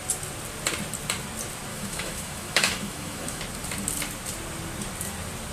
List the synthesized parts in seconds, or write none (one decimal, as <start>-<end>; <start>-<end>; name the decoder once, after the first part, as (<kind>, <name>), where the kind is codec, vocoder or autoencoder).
1.7-3.4 (autoencoder, DAC-VAE)